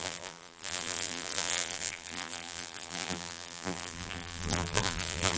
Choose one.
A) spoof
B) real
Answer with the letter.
A